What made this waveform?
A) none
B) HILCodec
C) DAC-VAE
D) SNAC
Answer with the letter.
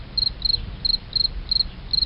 A